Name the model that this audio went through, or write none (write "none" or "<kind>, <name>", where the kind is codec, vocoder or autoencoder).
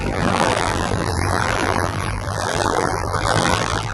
vocoder, BigVGAN v2